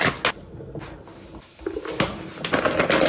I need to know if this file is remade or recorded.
recorded